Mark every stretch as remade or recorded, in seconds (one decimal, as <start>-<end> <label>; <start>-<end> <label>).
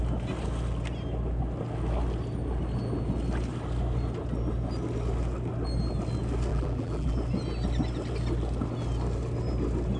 0.0-6.5 recorded; 6.5-7.1 remade; 7.1-10.0 recorded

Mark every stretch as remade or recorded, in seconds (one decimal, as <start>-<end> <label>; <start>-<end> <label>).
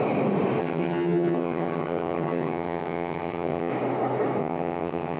0.0-0.6 recorded; 0.6-3.7 remade; 3.7-4.4 recorded; 4.4-5.2 remade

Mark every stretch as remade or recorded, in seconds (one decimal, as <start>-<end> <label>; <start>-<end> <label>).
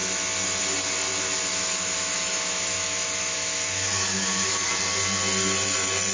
0.0-1.5 recorded; 1.5-4.7 remade; 4.7-6.1 recorded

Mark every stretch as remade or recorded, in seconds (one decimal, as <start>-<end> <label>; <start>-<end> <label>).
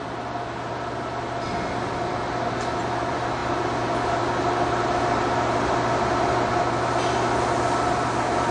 0.0-8.5 recorded